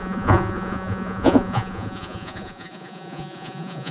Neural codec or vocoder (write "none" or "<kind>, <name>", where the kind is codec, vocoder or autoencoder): vocoder, Vocos